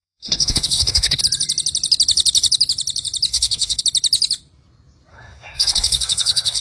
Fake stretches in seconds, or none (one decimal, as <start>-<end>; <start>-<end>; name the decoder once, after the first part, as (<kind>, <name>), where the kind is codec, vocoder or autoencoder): 0.0-1.2 (codec, SNAC); 3.3-3.8; 5.1-6.6